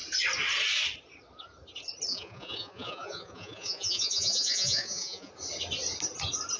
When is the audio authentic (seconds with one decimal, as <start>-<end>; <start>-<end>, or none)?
0.0-2.1; 5.3-6.6